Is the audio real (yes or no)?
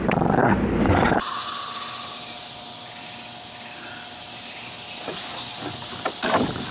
yes